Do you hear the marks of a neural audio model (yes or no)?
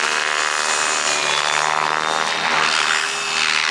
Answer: no